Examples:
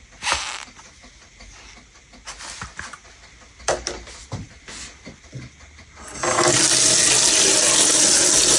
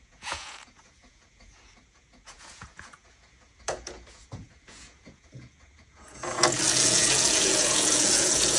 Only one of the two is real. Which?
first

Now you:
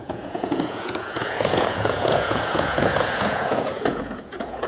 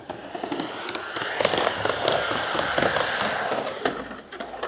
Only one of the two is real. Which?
second